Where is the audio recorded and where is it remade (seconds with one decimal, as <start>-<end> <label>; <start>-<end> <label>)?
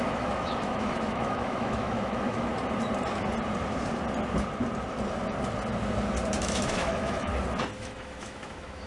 0.0-2.5 remade; 2.5-6.4 recorded; 6.4-7.3 remade; 7.3-7.8 recorded; 7.8-8.9 remade